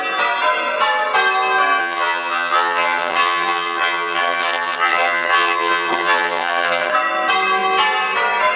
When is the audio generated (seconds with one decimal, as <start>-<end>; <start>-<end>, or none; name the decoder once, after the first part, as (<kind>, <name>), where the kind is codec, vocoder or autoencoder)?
1.8-6.9 (vocoder, HiFi-GAN)